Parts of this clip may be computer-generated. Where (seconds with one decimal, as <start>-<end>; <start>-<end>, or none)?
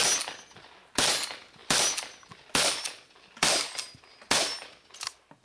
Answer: 1.6-4.4